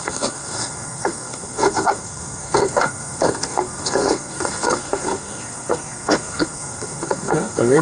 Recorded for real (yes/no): no